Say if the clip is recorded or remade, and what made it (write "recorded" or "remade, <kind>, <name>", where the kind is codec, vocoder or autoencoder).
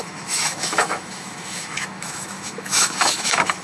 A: remade, autoencoder, DAC-VAE